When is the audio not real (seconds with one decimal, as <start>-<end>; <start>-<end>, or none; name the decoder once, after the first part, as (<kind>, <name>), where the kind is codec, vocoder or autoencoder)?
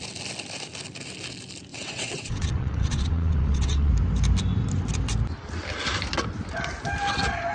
1.7-3.9 (vocoder, WaveNeXt)